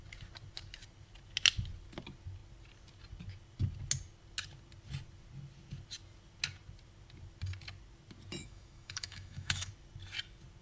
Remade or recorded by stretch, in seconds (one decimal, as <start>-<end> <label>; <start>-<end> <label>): 0.0-8.4 recorded; 8.4-9.7 remade; 9.7-10.6 recorded